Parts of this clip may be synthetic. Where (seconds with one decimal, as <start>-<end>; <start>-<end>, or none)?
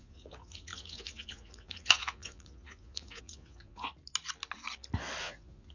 0.0-3.9; 5.2-5.7